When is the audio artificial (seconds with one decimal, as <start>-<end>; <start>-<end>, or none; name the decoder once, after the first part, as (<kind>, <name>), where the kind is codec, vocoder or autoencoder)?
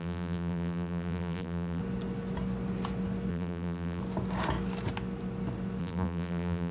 0.0-1.8 (vocoder, BigVGAN v2); 3.3-4.0; 5.8-6.7